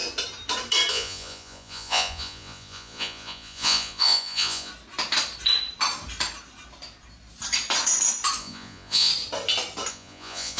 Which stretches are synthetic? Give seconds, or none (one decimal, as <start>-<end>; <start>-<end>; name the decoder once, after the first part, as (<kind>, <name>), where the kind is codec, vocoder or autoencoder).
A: 0.9-4.7 (vocoder, Vocos); 8.4-9.1; 9.9-10.6